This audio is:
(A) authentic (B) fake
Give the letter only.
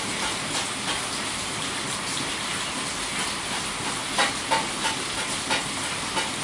A